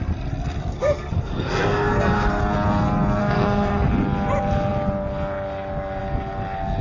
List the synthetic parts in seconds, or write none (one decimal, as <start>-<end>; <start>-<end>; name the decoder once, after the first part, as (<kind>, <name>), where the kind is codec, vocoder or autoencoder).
0.6-2.4 (codec, SNAC); 3.2-3.9